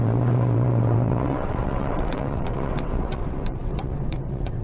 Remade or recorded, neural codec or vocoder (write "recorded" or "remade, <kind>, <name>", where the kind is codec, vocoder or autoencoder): remade, vocoder, WaveNeXt